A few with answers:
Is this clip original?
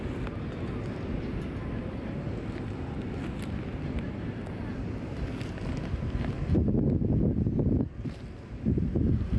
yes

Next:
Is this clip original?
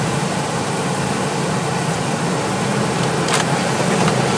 yes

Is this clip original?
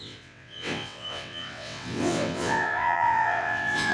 no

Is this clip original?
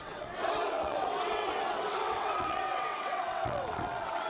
no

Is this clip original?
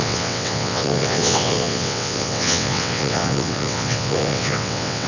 no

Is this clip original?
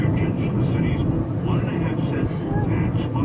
yes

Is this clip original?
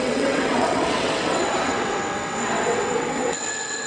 no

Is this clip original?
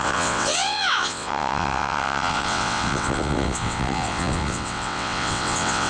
no